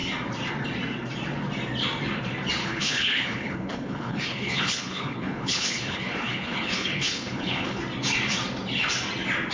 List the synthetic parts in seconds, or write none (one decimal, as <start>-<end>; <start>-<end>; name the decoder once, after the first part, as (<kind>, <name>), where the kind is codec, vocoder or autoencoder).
2.6-7.8 (codec, HILCodec)